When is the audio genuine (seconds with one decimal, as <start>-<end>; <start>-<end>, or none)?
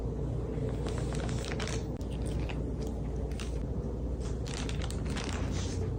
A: 0.0-6.0